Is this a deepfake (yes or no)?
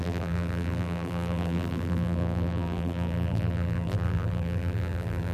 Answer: yes